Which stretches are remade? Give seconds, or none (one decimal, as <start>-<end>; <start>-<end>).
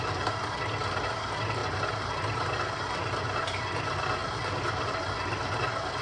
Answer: 4.2-5.0